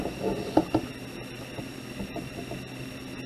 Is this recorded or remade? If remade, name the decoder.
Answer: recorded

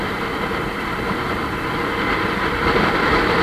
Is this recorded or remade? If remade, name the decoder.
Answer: recorded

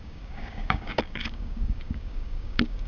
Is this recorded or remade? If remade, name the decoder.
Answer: remade, codec, DAC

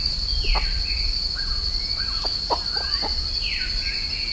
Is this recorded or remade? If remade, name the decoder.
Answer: recorded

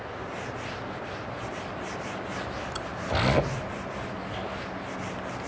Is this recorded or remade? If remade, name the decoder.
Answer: recorded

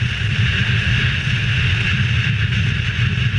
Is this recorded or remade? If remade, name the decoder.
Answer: recorded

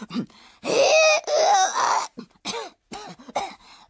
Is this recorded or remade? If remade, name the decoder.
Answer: recorded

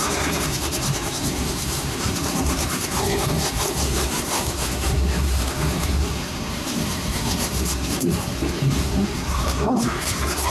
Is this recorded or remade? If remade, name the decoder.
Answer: remade, codec, SNAC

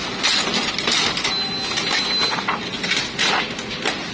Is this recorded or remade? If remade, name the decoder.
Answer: recorded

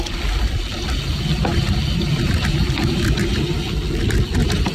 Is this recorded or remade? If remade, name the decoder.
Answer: remade, vocoder, BigVGAN v2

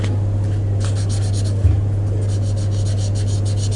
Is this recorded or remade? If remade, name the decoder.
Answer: recorded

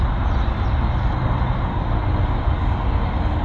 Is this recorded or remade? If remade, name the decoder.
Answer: recorded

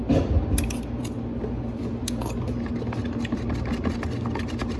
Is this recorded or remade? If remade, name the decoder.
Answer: recorded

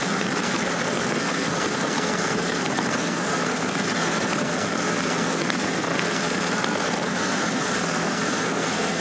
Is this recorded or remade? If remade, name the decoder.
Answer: remade, codec, SNAC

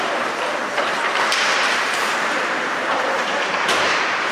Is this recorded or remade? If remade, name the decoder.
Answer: remade, vocoder, BigVGAN v2